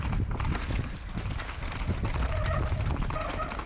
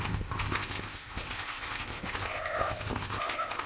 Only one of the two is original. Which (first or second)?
first